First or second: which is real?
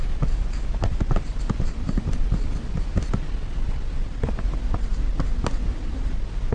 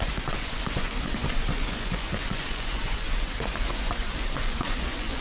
first